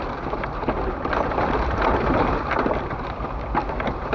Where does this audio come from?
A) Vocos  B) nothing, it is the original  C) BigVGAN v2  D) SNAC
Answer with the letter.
C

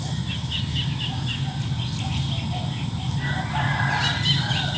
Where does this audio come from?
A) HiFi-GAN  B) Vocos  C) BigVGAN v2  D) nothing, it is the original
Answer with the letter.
D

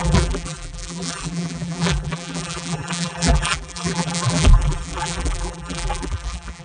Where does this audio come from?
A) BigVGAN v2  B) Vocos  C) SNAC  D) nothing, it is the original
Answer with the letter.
A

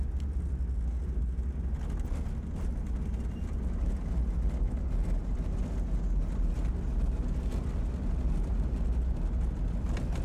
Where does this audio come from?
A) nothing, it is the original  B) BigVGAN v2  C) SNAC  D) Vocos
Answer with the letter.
A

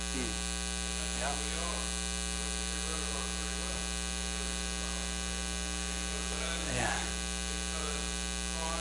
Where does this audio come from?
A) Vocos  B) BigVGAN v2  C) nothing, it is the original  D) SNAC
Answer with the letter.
C